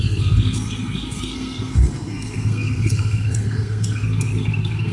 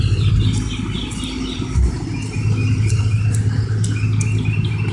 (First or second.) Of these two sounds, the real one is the second